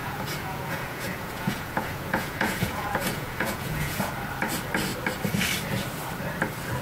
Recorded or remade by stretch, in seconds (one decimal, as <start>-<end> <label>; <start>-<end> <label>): 0.0-4.1 remade; 4.1-6.8 recorded